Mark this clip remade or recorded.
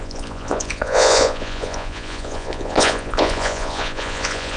remade